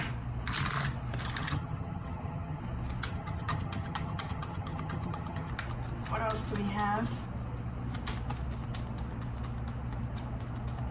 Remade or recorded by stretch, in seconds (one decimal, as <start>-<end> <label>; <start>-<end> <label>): 0.0-1.4 recorded; 1.4-2.6 remade; 2.6-3.1 recorded; 3.1-5.5 remade; 5.5-10.9 recorded